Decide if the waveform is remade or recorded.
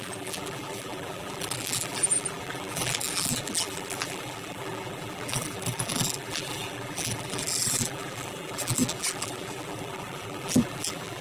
remade